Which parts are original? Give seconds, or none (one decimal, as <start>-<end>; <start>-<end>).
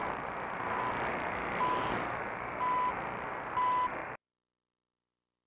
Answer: 0.0-4.0; 5.0-5.5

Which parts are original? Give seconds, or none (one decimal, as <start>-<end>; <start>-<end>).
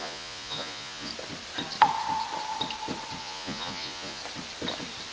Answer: 1.1-3.2; 4.2-5.1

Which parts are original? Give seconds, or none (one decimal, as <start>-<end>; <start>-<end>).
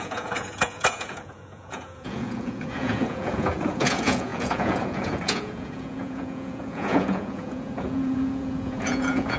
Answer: none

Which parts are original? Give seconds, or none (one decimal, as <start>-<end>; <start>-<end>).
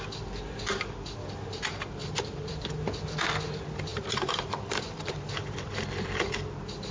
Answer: 0.0-2.0; 2.9-3.9; 5.7-6.9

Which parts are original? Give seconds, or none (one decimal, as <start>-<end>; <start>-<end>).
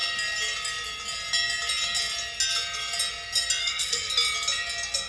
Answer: 0.0-3.6; 4.1-5.1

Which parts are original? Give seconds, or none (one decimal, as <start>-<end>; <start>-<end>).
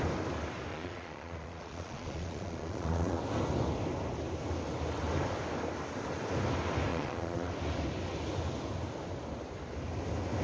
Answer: 0.0-0.7; 3.2-6.9; 7.5-10.4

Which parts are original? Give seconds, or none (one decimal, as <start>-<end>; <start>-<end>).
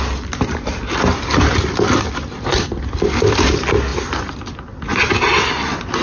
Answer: 0.0-6.0